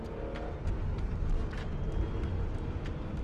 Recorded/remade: recorded